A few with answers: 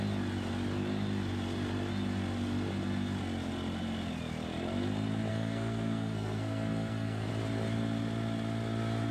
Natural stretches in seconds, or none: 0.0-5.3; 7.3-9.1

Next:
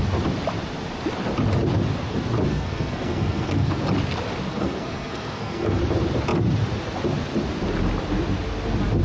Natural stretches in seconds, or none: 0.0-2.5; 3.8-4.5; 5.8-9.0

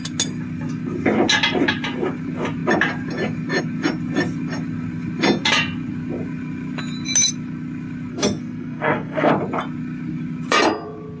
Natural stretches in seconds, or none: 0.0-8.1; 9.3-11.2

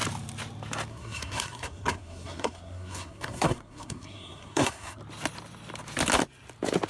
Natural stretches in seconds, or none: 0.0-0.9; 5.0-6.9